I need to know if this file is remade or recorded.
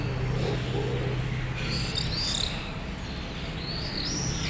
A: recorded